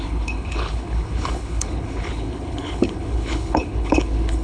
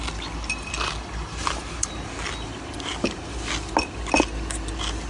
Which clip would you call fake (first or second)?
first